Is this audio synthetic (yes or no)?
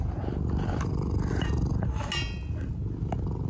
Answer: no